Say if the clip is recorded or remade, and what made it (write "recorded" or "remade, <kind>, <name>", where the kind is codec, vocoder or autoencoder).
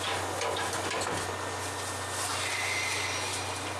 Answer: recorded